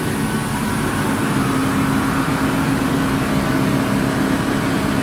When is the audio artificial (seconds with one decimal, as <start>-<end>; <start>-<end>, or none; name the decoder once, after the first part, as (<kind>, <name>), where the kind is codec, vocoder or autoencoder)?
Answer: none